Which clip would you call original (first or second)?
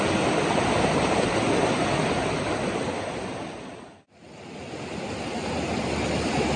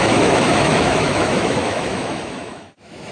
first